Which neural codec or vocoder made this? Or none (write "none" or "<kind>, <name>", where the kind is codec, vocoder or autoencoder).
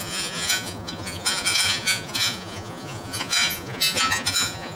vocoder, Vocos